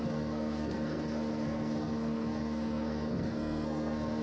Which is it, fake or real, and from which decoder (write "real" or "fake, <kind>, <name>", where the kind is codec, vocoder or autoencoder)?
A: fake, codec, SNAC